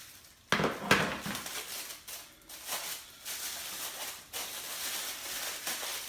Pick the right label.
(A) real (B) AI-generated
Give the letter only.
A